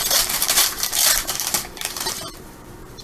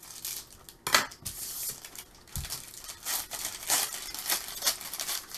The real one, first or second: second